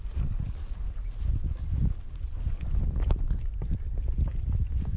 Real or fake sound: fake